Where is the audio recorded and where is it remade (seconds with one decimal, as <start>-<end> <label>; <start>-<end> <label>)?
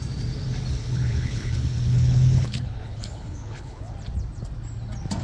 0.0-0.8 recorded; 0.8-3.9 remade; 3.9-5.2 recorded